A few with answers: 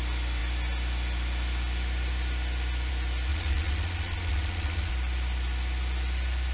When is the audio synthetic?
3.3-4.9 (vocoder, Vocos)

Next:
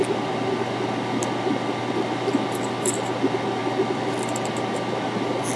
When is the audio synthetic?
none

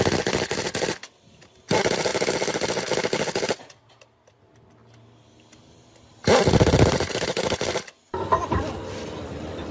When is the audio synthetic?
none

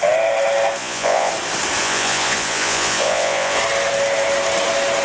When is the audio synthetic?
0.8-1.3 (vocoder, Vocos); 1.8-3.6

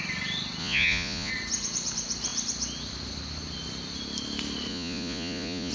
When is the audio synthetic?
0.6-1.3 (vocoder, Vocos); 4.7-5.7

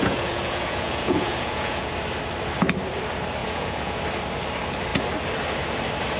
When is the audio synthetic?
0.0-1.9 (vocoder, Vocos); 3.4-4.0

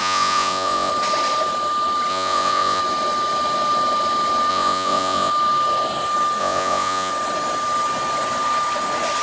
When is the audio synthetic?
0.0-0.9 (vocoder, Vocos); 2.1-2.8; 4.5-5.3; 6.4-7.1